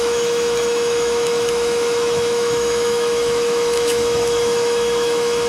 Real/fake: fake